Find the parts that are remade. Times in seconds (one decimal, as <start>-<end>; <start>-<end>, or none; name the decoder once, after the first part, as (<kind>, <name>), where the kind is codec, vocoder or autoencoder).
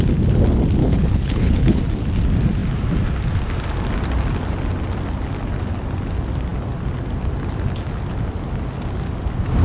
0.8-1.8 (codec, HILCodec)